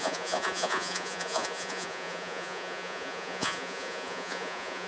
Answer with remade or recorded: remade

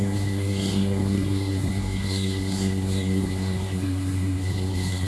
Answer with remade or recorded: remade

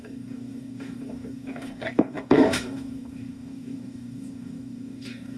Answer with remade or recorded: remade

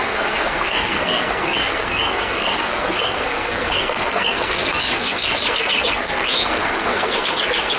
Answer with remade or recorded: remade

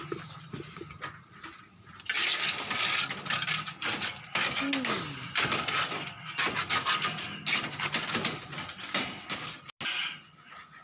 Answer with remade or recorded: recorded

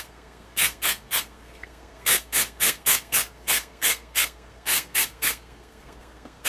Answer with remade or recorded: remade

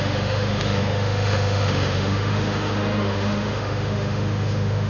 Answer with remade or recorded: remade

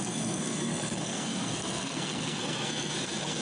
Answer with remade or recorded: remade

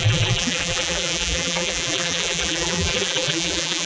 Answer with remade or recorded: remade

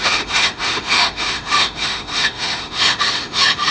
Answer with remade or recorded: remade